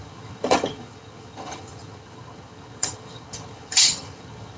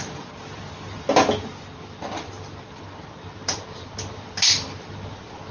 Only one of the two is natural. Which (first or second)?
second